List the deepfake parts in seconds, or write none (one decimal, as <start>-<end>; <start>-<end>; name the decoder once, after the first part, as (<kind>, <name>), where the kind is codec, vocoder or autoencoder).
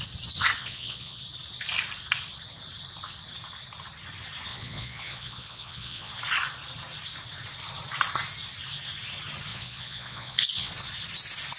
0.6-1.2 (vocoder, Vocos); 4.5-6.1; 9.5-10.7